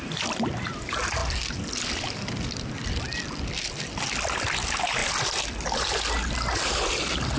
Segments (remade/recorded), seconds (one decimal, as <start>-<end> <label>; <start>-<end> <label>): 0.0-7.4 recorded